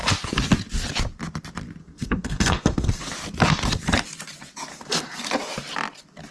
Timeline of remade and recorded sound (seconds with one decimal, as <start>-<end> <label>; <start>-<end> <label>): 0.0-1.8 recorded; 1.8-3.0 remade; 3.0-4.7 recorded; 4.7-5.2 remade; 5.2-6.3 recorded